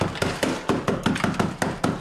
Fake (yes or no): no